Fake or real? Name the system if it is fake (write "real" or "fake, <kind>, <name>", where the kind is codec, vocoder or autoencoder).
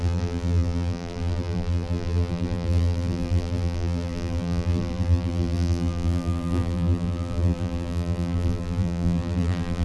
fake, vocoder, BigVGAN v2